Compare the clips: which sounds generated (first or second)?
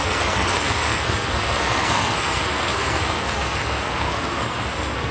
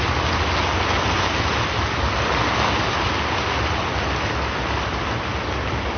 first